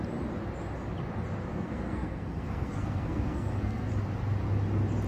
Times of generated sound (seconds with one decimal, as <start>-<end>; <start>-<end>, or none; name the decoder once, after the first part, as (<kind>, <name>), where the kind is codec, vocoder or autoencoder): 1.5-3.9 (codec, SNAC)